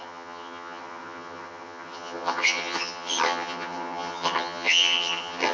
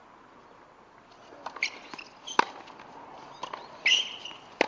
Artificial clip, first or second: first